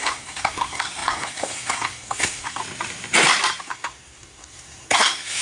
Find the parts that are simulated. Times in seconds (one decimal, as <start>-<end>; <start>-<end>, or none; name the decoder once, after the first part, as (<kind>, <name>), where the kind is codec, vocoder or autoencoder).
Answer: 0.0-2.6 (codec, SNAC); 3.6-5.4